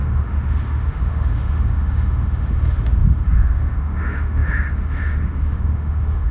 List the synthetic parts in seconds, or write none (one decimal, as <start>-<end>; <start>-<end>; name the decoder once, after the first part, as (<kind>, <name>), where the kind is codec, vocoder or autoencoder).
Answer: 0.0-6.3 (autoencoder, DAC-VAE)